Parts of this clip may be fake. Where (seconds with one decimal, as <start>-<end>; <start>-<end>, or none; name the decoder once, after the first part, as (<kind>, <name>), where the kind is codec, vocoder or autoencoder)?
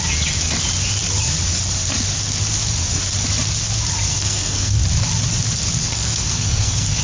4.1-4.8 (codec, SNAC); 5.8-7.0